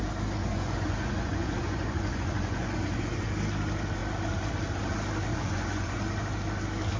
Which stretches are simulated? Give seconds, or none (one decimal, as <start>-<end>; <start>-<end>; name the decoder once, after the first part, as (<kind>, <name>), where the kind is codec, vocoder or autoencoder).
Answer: 0.4-3.3 (vocoder, Vocos); 5.3-6.0